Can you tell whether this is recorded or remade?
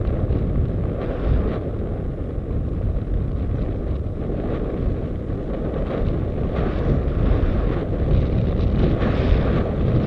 recorded